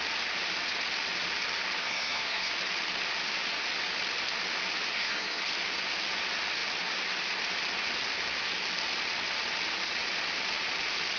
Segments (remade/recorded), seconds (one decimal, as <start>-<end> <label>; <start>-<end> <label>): 0.0-1.8 recorded; 1.8-2.5 remade; 2.5-4.9 recorded; 4.9-5.4 remade; 5.4-11.2 recorded